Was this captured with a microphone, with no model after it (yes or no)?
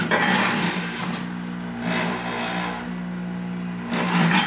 yes